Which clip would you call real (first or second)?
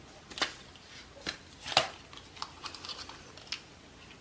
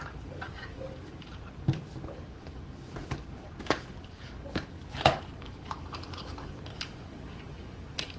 first